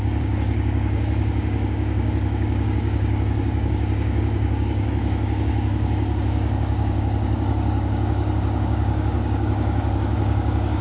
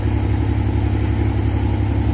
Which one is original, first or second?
second